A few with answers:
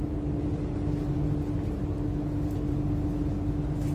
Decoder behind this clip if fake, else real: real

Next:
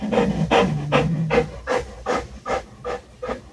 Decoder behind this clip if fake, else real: real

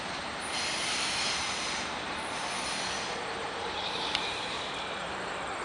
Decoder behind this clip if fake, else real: fake, vocoder, BigVGAN v2